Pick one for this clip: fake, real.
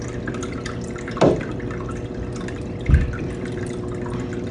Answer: real